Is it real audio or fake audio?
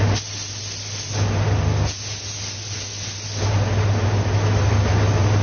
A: real